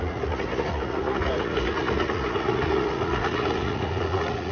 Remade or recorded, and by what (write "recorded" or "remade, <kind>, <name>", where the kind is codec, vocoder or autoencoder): remade, vocoder, Vocos